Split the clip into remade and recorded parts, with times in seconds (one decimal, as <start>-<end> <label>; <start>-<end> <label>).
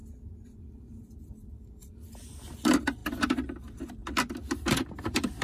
0.0-0.7 recorded; 0.7-3.0 remade; 3.0-3.6 recorded; 3.6-4.0 remade; 4.0-4.6 recorded; 4.6-5.4 remade